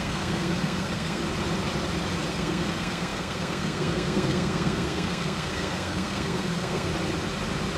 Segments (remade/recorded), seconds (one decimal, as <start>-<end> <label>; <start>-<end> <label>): 0.0-1.2 remade; 1.2-2.3 recorded; 2.3-6.9 remade; 6.9-7.8 recorded